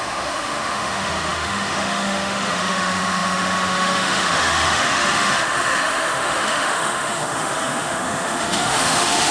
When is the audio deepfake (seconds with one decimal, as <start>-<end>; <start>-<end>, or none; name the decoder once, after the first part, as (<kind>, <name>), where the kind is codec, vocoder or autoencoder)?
0.0-9.3 (autoencoder, DAC-VAE)